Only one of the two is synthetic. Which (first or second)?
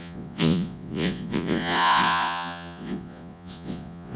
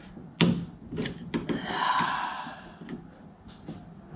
first